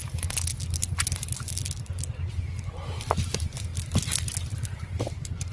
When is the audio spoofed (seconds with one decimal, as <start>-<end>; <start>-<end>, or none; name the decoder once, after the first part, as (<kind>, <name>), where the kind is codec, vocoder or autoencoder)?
3.3-3.7 (vocoder, BigVGAN v2); 4.5-5.5